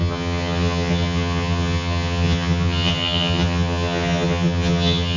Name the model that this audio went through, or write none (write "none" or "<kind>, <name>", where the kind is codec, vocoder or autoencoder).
vocoder, HiFi-GAN